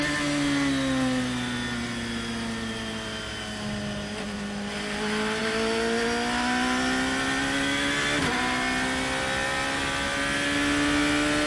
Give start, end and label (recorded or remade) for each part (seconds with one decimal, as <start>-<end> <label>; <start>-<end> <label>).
0.0-11.5 recorded

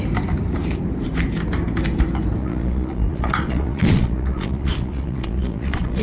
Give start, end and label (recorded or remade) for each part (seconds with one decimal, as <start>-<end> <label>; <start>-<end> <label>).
0.0-2.4 recorded; 2.4-6.0 remade

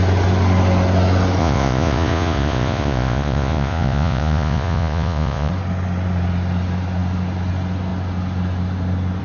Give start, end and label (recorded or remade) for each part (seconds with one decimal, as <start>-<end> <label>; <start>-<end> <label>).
0.0-1.4 recorded; 1.4-5.5 remade; 5.5-9.2 recorded